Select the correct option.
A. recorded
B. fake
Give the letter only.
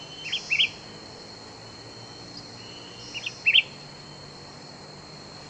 A